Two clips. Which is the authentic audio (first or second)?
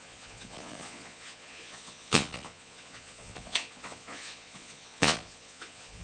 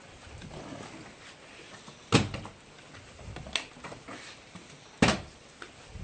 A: second